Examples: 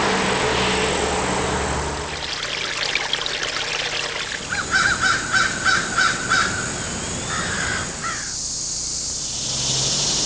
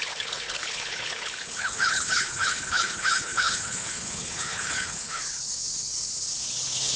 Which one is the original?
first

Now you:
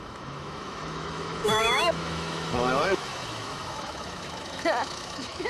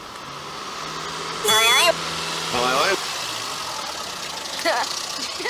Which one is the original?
second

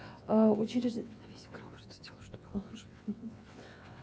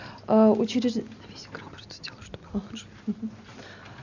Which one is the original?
second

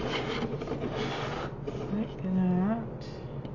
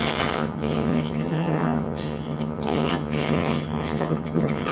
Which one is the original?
first